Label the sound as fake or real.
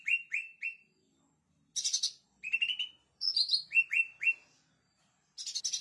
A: real